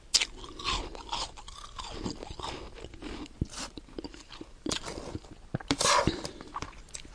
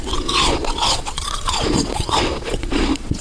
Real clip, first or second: first